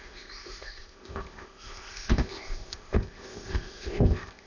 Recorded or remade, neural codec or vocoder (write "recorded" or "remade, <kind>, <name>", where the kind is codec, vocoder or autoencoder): remade, codec, ZipCodec